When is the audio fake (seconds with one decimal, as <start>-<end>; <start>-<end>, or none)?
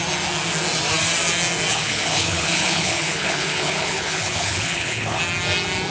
1.7-5.2